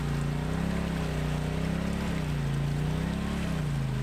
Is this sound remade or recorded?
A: recorded